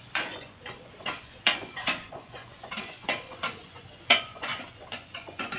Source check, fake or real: fake